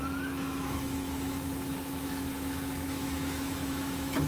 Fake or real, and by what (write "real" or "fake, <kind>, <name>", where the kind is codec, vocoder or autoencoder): fake, autoencoder, DAC-VAE